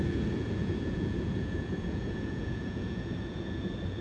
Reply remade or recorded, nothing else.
remade